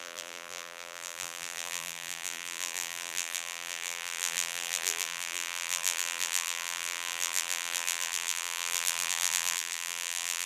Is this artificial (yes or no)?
yes